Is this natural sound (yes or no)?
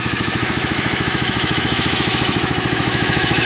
no